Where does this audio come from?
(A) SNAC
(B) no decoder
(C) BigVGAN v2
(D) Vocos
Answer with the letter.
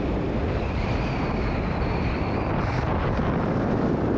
C